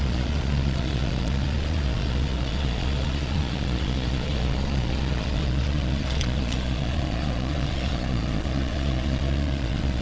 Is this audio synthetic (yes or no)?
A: yes